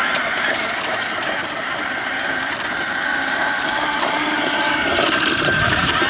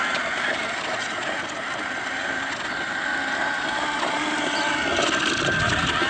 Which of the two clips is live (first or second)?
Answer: second